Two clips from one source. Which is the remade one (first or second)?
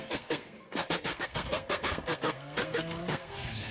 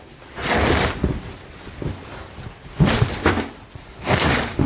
first